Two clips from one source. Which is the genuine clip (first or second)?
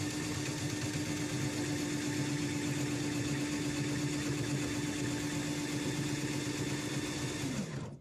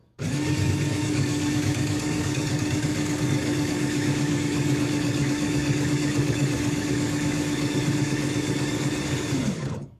first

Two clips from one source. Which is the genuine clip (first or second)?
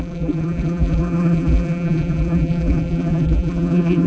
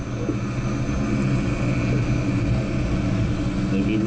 second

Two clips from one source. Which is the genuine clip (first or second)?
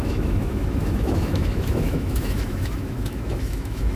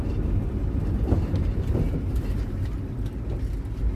second